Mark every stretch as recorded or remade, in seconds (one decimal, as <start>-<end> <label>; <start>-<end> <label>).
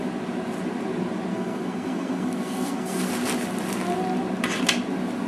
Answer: 0.0-1.3 recorded; 1.3-3.1 remade; 3.1-5.3 recorded